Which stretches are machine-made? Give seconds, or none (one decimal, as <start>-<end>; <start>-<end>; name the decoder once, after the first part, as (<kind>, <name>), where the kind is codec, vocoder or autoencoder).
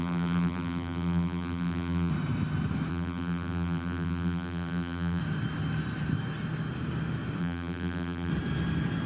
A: 0.0-2.1 (vocoder, BigVGAN v2); 2.9-5.2; 7.4-8.3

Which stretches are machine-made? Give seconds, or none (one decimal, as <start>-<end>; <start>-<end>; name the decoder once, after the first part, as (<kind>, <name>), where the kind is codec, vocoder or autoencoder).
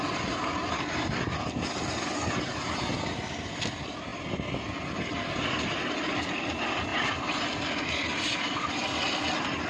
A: none